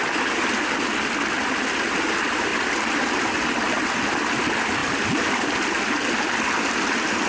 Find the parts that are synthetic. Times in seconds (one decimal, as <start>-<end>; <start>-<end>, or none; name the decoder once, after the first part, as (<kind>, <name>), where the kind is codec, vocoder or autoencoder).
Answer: 2.5-3.1 (vocoder, BigVGAN v2); 4.8-6.3